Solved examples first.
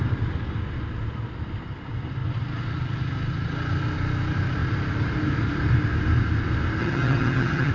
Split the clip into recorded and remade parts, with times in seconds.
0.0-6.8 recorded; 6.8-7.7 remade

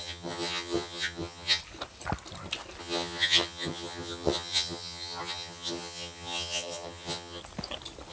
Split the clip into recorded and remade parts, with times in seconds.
0.0-1.6 remade; 1.6-2.8 recorded; 2.8-7.4 remade; 7.4-8.1 recorded

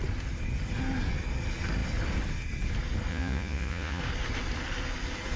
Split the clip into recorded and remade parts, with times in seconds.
0.0-3.1 recorded; 3.1-4.0 remade; 4.0-5.4 recorded

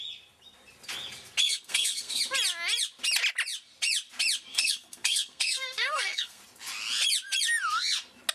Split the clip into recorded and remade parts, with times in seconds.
0.0-1.4 recorded; 1.4-2.2 remade; 2.2-4.5 recorded; 4.5-6.4 remade; 6.4-8.3 recorded